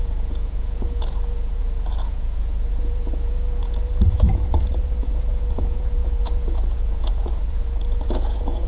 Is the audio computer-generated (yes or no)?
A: yes